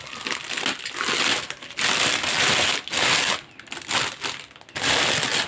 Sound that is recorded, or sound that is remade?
recorded